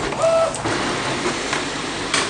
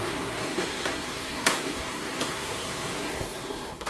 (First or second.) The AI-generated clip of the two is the second